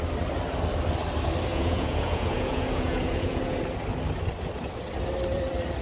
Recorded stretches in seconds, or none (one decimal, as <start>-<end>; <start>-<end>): 0.0-1.5; 3.6-5.8